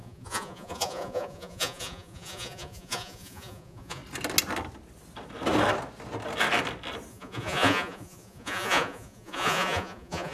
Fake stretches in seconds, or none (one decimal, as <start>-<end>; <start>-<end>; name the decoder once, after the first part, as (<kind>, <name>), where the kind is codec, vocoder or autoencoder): 0.0-4.0 (vocoder, Vocos); 7.1-10.3